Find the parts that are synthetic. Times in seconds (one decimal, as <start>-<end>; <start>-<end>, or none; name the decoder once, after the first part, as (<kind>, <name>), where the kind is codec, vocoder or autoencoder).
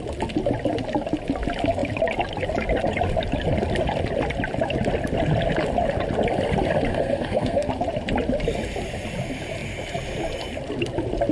6.9-7.7 (codec, SNAC)